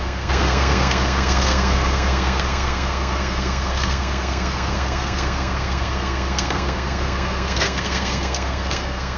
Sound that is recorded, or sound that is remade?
remade